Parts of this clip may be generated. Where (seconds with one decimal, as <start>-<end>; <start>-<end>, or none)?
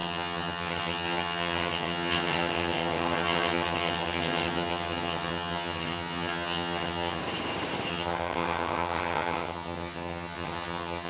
0.0-7.2; 7.9-11.1